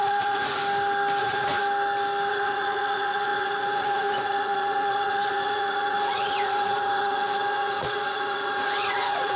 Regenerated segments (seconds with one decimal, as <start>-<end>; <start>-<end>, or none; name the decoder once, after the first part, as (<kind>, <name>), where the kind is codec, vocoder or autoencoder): 0.0-0.6 (vocoder, Vocos); 1.2-1.6; 2.3-9.4